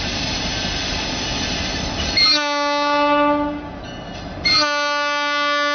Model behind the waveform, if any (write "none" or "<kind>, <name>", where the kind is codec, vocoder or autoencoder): none